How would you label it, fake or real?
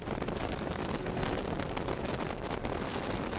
real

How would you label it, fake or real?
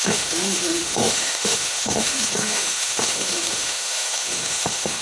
fake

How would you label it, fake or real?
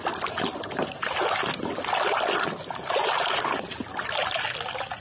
real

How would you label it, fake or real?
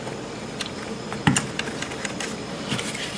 fake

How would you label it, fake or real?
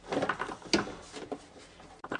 real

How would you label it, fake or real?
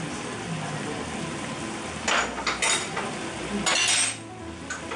real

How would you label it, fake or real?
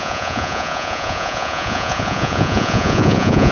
fake